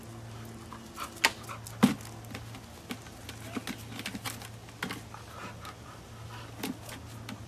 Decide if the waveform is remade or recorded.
recorded